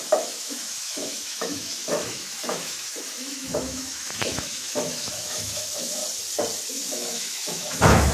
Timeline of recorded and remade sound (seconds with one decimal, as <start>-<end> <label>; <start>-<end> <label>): 0.0-6.0 remade; 6.0-6.7 recorded; 6.7-8.1 remade